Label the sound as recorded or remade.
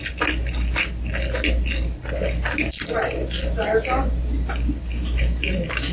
recorded